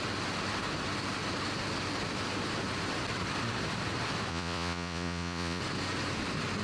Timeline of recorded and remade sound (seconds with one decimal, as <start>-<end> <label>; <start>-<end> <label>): 0.0-4.3 recorded; 4.3-5.6 remade; 5.6-6.6 recorded